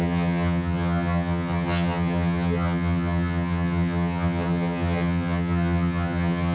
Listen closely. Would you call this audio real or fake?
fake